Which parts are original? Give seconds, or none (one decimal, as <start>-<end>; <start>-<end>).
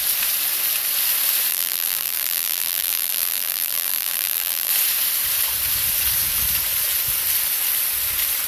0.0-1.5; 4.7-8.5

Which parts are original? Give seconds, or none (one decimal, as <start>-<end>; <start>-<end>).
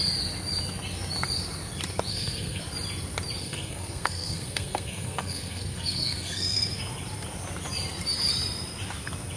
0.0-2.1; 2.6-3.4; 6.8-9.4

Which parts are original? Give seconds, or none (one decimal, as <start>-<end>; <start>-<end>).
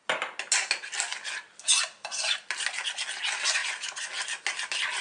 0.0-3.6; 4.1-5.0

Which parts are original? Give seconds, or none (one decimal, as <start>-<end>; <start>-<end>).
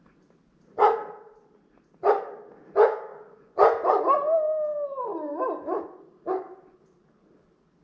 0.0-3.1; 3.9-7.8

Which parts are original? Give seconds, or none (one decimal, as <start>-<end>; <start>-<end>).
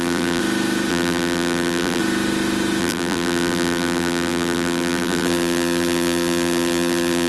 0.4-0.9; 2.0-2.8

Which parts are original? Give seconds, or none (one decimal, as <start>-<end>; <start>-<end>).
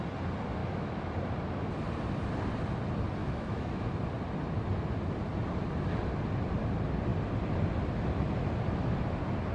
0.0-0.6; 1.1-3.2; 3.9-9.5